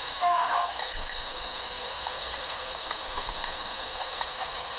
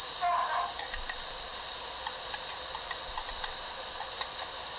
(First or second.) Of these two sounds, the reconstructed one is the first